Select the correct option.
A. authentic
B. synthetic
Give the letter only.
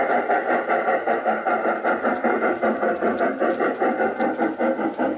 A